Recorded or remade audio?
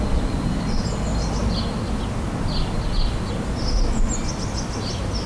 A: recorded